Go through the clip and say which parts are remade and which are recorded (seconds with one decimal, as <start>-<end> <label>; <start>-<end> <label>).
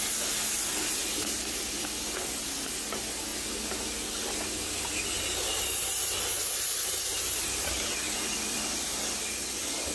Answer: 0.0-9.9 recorded